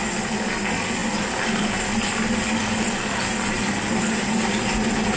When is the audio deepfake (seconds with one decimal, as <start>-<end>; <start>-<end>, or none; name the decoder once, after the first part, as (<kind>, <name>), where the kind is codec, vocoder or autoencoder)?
none